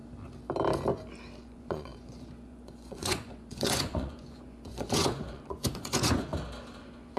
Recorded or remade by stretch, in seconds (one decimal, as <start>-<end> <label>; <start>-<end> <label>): 0.0-1.4 recorded; 1.4-6.3 remade; 6.3-6.8 recorded; 6.8-7.2 remade